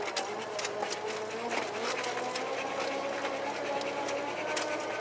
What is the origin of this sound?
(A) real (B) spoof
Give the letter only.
A